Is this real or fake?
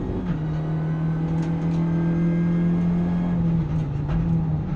real